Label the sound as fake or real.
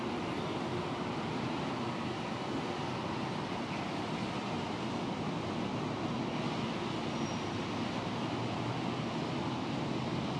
real